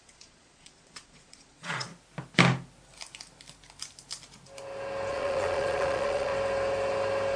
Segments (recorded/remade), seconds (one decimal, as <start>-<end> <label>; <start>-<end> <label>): 0.0-1.9 remade; 1.9-5.1 recorded; 5.1-6.3 remade; 6.3-7.4 recorded